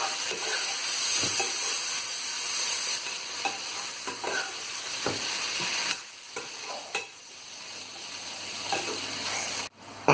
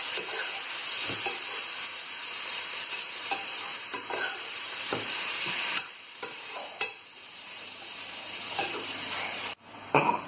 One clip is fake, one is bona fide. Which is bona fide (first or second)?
first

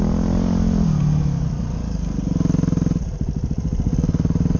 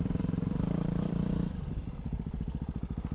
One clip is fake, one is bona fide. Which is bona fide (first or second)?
first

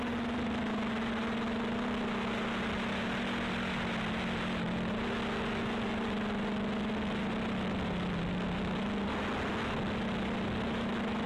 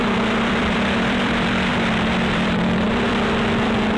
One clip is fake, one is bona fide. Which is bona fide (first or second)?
first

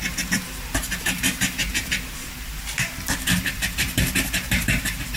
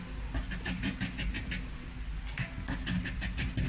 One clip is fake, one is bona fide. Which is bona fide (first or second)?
second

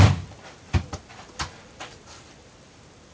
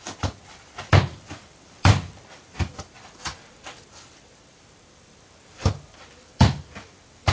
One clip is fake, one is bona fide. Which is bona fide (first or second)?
first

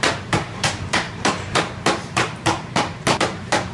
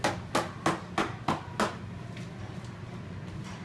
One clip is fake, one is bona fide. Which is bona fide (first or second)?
second